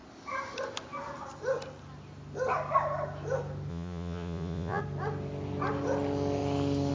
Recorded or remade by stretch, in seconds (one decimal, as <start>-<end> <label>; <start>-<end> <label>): 0.0-3.7 recorded; 3.7-4.8 remade; 4.8-6.9 recorded